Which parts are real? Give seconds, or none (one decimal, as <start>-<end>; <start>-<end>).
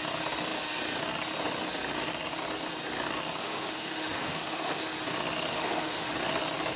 0.0-3.4; 4.8-5.5; 6.1-6.8